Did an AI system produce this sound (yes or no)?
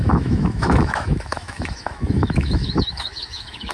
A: yes